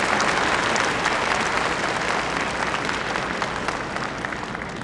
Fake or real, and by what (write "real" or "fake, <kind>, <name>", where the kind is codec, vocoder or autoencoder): real